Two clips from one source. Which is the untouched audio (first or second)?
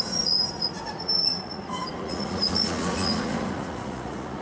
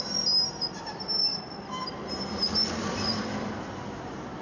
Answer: second